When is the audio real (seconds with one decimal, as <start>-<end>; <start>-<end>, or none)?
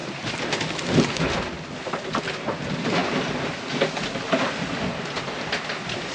0.0-6.1